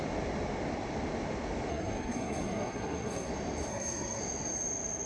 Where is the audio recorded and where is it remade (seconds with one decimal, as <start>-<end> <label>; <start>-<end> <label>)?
0.0-1.7 recorded; 1.7-3.3 remade; 3.3-3.7 recorded; 3.7-4.2 remade; 4.2-5.1 recorded